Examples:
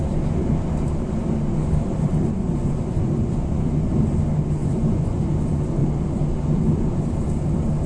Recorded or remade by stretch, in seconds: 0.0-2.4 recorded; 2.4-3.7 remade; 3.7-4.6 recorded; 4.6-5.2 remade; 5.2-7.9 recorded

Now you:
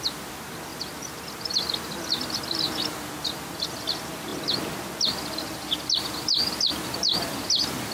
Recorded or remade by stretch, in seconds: 0.0-7.9 recorded

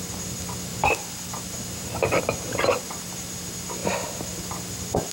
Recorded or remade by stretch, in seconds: 0.0-5.1 recorded